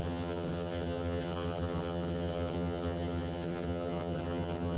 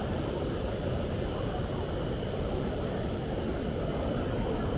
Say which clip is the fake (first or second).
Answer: first